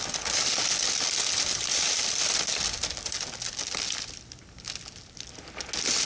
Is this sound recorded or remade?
recorded